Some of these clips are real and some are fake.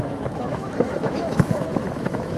fake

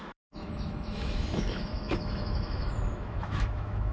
fake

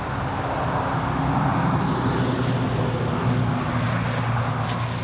real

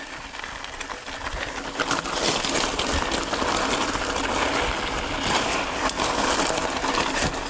real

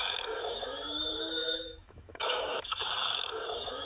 fake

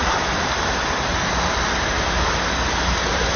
real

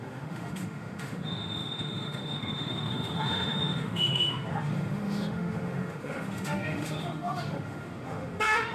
fake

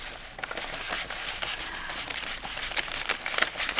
real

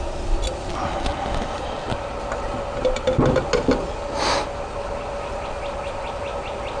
real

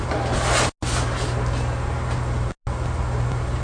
real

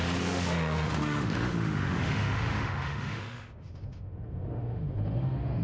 fake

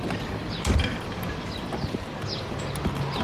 real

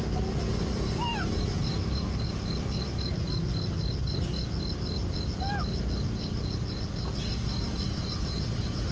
real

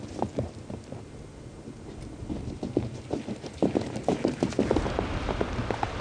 real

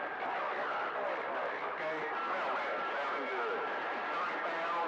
real